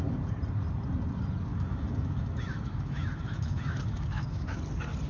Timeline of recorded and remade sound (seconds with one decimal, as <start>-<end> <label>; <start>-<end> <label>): 0.0-1.5 recorded; 1.5-4.6 remade; 4.6-5.1 recorded